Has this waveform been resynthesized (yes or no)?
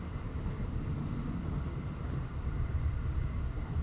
no